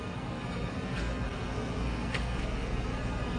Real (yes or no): no